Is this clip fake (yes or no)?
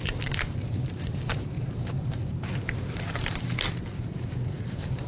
yes